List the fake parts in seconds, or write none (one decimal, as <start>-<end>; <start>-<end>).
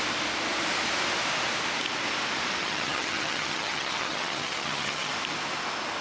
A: 2.6-5.1